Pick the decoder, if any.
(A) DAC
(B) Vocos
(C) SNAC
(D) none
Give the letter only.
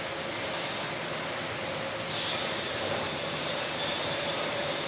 D